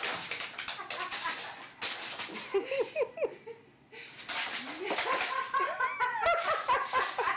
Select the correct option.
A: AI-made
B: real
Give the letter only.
B